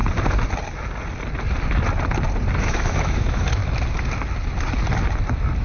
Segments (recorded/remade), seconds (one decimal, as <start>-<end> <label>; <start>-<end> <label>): 0.0-2.6 recorded; 2.6-3.6 remade; 3.6-5.6 recorded